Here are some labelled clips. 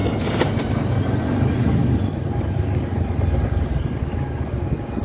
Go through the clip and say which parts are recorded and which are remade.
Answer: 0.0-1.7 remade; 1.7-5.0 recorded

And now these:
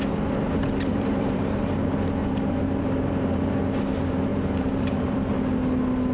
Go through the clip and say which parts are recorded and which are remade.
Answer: 0.0-0.9 recorded; 0.9-1.4 remade; 1.4-2.2 recorded; 2.2-3.6 remade; 3.6-4.3 recorded; 4.3-5.4 remade; 5.4-6.1 recorded

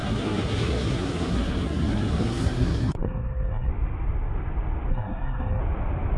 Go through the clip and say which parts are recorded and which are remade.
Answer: 0.0-3.7 remade; 3.7-4.9 recorded; 4.9-5.6 remade; 5.6-6.2 recorded

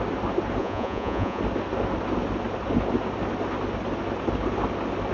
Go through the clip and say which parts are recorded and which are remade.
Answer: 0.0-0.6 recorded; 0.6-1.4 remade; 1.4-5.1 recorded

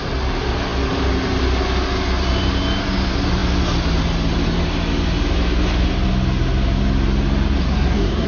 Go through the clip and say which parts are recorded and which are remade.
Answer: 0.0-7.6 recorded; 7.6-8.3 remade